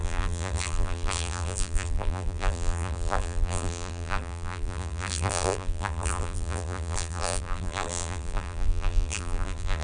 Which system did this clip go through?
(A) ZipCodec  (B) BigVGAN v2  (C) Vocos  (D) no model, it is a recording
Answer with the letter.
B